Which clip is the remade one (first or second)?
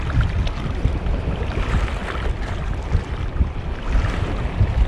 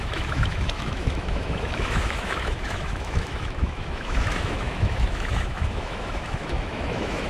second